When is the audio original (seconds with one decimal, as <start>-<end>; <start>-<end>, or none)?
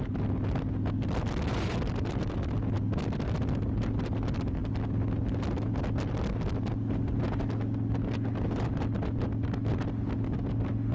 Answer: 0.0-10.9